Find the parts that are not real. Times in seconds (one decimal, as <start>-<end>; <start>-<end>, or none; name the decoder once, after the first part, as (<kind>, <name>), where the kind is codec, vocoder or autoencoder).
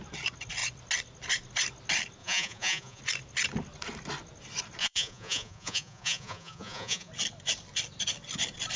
2.2-3.0 (vocoder, Vocos); 4.8-7.1